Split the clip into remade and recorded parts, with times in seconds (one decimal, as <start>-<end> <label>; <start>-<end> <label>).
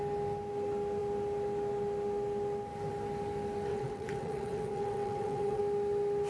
0.0-3.7 recorded; 3.7-5.6 remade; 5.6-6.3 recorded